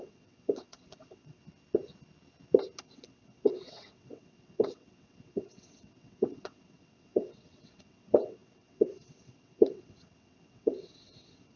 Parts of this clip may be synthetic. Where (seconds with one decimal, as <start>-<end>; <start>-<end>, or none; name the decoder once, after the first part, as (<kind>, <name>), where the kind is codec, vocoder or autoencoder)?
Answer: 0.0-1.4 (vocoder, WaveNeXt); 2.8-11.6